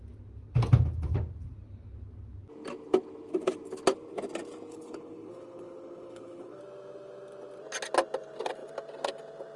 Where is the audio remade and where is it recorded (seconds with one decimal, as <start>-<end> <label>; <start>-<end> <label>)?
0.0-4.7 recorded; 4.7-6.6 remade; 6.6-9.6 recorded